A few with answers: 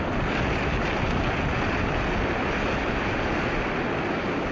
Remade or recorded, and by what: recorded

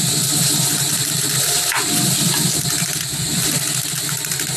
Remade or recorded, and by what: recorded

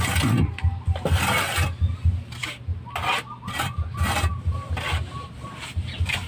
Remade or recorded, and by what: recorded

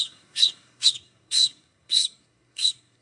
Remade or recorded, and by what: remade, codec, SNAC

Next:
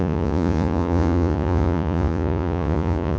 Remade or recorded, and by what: remade, vocoder, Vocos